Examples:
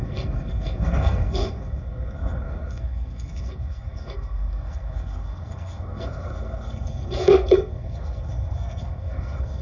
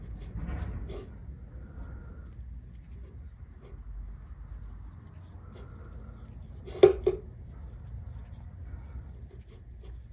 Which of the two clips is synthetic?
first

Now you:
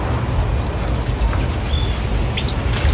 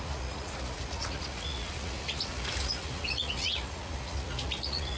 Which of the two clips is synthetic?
second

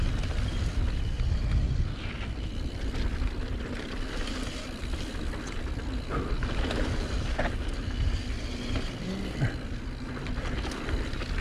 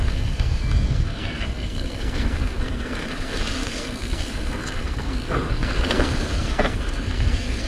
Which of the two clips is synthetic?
second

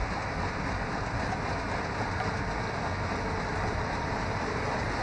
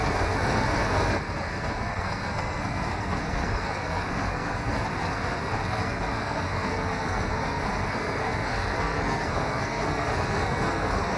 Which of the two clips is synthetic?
second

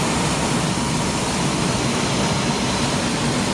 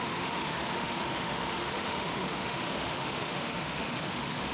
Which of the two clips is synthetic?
second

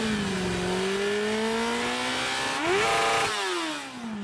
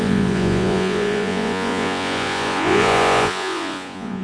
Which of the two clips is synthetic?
second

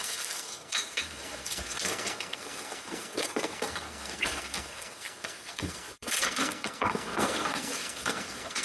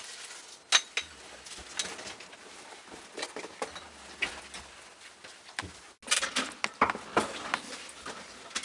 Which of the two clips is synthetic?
first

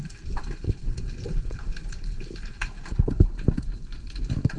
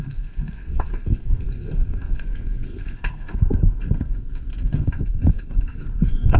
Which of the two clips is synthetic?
second